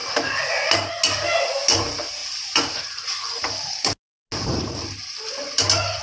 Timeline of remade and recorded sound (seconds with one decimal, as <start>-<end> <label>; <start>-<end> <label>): 0.0-6.0 recorded